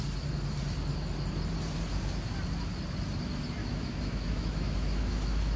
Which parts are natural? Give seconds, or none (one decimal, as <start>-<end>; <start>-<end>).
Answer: 0.0-3.6